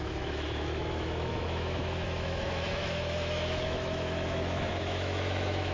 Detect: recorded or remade remade